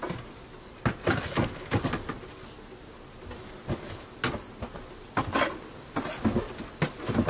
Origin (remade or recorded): recorded